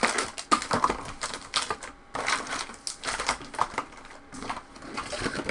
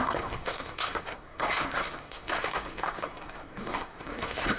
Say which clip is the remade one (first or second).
second